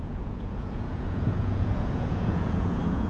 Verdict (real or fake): fake